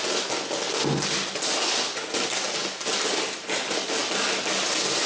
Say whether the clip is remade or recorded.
recorded